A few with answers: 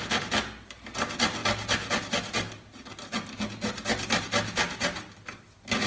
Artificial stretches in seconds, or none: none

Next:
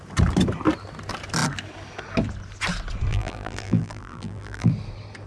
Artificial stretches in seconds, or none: 3.1-4.7 (vocoder, BigVGAN v2)

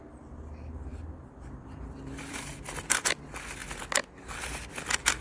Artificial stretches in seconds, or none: 0.9-3.2 (vocoder, BigVGAN v2)

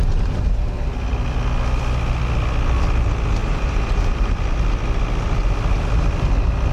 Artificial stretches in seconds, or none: 3.4-4.3 (vocoder, BigVGAN v2)